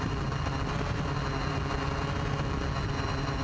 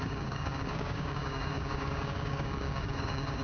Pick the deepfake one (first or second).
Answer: second